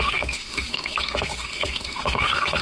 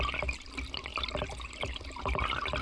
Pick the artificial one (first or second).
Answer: first